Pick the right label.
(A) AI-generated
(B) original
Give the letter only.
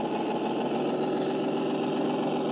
B